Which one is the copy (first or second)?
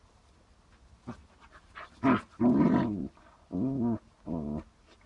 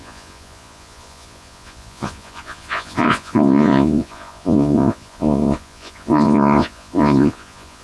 second